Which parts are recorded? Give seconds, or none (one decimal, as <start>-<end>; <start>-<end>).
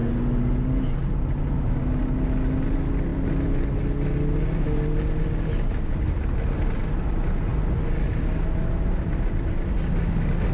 0.0-10.5